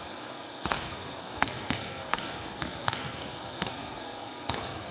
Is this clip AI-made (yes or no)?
yes